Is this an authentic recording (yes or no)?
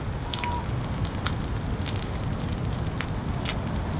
yes